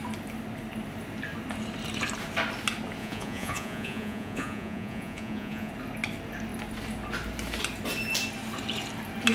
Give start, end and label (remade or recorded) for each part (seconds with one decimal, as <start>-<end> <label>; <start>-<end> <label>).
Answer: 0.0-3.0 recorded; 3.0-5.7 remade; 5.7-9.3 recorded

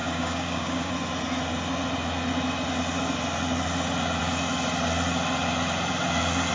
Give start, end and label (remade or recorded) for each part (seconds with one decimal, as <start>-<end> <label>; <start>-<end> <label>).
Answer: 0.0-0.9 remade; 0.9-6.5 recorded

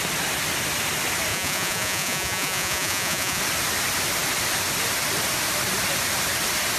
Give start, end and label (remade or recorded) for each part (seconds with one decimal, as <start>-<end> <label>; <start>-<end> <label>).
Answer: 0.0-1.3 recorded; 1.3-3.4 remade; 3.4-6.8 recorded

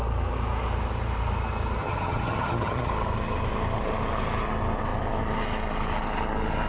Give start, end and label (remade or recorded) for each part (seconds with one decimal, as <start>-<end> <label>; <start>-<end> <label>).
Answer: 0.0-1.8 recorded; 1.8-2.9 remade; 2.9-6.7 recorded

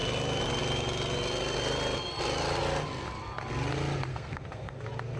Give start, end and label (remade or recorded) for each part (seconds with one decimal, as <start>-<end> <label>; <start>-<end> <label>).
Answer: 0.0-4.1 recorded; 4.1-4.8 remade; 4.8-5.2 recorded

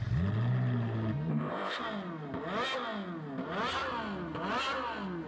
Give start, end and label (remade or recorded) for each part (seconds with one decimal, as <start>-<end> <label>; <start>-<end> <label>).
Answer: 0.0-1.3 recorded; 1.3-1.8 remade; 1.8-5.3 recorded

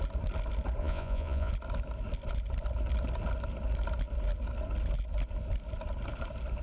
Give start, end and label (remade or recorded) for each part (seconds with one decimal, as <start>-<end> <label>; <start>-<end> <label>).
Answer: 0.0-0.8 recorded; 0.8-1.5 remade; 1.5-6.6 recorded

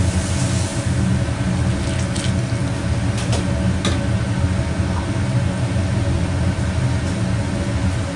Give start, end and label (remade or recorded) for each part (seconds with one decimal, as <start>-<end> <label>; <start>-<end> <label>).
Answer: 0.0-8.2 recorded